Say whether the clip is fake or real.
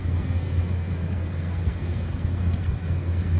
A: fake